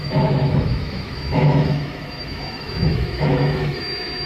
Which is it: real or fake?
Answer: fake